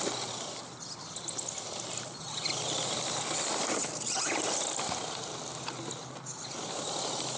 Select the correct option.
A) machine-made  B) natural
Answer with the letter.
B